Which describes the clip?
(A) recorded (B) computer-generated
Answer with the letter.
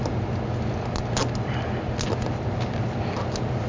A